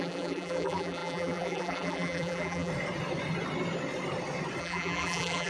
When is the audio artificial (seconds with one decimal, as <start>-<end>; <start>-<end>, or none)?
0.0-2.7; 4.6-5.5